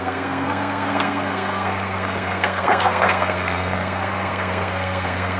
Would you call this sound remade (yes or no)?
yes